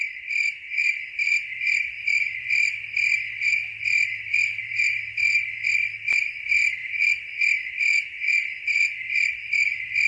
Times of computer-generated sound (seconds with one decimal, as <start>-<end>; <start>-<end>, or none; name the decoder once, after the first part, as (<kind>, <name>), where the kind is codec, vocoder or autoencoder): 0.0-6.8 (vocoder, BigVGAN v2); 9.3-10.1